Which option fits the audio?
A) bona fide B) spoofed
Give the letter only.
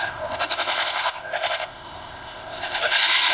B